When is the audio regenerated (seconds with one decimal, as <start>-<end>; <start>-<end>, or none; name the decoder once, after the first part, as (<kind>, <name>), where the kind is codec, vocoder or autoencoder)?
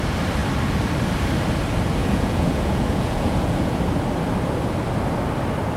2.0-3.8 (vocoder, Vocos)